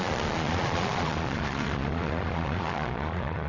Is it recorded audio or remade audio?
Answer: remade